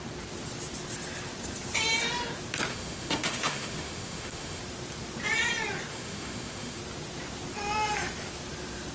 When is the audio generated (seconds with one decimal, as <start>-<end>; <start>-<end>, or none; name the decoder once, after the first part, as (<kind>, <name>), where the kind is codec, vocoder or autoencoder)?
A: 2.7-4.6 (autoencoder, DAC-VAE); 5.9-6.8